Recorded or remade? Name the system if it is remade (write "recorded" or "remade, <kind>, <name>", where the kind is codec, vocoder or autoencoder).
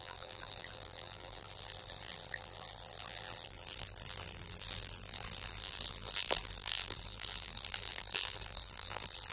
remade, vocoder, BigVGAN v2